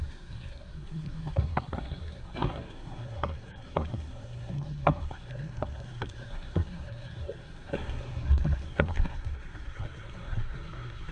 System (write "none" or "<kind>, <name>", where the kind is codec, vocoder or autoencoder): codec, SNAC